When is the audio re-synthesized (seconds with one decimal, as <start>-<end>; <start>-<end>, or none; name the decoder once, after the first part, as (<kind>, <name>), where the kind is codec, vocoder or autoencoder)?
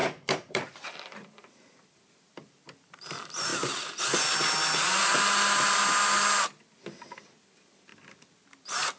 0.0-3.5 (vocoder, BigVGAN v2); 7.4-7.9